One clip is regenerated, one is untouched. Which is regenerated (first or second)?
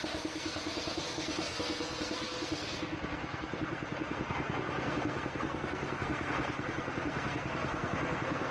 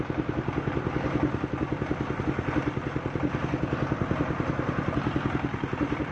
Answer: first